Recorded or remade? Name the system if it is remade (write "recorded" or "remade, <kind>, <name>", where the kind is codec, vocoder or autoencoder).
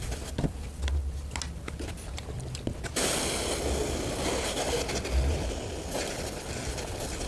recorded